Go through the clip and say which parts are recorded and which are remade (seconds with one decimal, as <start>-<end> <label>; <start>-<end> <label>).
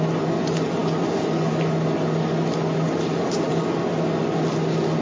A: 0.0-5.0 recorded